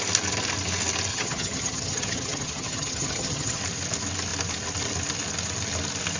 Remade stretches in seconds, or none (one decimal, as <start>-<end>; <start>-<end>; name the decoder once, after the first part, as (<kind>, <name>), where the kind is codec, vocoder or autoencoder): 1.1-3.6 (vocoder, HiFi-GAN)